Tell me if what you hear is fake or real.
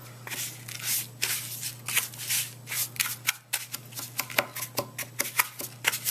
real